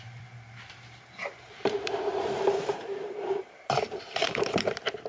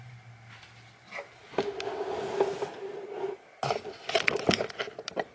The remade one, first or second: first